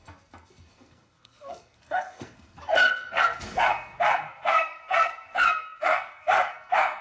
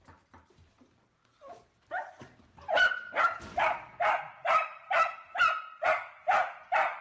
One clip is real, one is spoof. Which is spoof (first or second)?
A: first